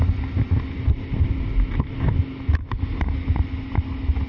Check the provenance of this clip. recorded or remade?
recorded